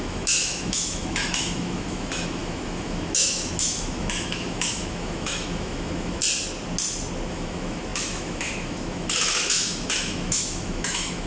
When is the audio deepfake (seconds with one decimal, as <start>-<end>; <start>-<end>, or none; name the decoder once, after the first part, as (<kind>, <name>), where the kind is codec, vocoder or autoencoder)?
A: 0.0-6.2 (autoencoder, DAC-VAE); 7.3-11.3